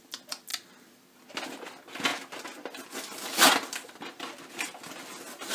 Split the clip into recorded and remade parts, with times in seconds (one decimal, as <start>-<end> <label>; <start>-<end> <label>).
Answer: 0.0-0.5 recorded; 0.5-1.2 remade; 1.2-5.5 recorded

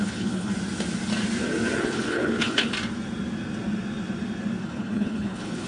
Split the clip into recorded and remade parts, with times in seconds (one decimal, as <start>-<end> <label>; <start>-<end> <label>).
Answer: 0.0-0.5 remade; 0.5-1.8 recorded; 1.8-2.7 remade; 2.7-4.6 recorded; 4.6-5.7 remade

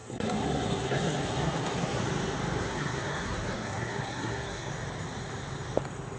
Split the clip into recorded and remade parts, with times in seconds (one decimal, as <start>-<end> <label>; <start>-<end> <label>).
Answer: 0.0-2.0 remade; 2.0-2.6 recorded; 2.6-4.7 remade; 4.7-6.2 recorded

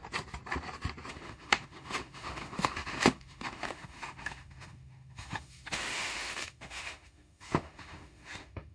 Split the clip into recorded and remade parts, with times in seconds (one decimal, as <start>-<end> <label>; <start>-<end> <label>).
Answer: 0.0-1.1 recorded; 1.1-8.7 remade